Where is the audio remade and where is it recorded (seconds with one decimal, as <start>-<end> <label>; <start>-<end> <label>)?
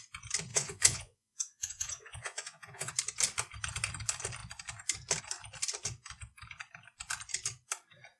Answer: 0.0-0.5 recorded; 0.5-2.9 remade; 2.9-8.2 recorded